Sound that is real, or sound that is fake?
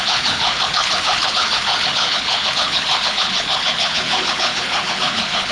fake